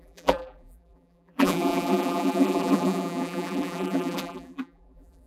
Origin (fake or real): fake